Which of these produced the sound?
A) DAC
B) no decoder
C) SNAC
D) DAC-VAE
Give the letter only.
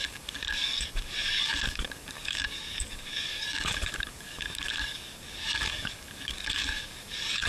A